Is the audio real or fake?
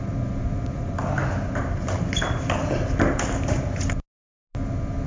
real